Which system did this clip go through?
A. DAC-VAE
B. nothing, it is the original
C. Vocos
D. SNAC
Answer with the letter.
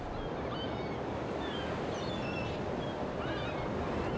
B